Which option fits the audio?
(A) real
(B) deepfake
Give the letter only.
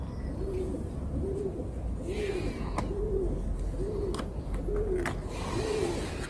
A